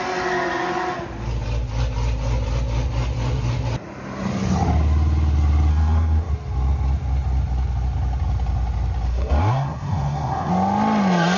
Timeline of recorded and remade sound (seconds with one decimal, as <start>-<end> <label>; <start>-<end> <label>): 0.0-5.7 recorded; 5.7-6.3 remade; 6.3-9.1 recorded; 9.1-10.5 remade; 10.5-11.4 recorded